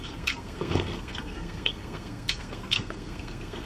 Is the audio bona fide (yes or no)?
no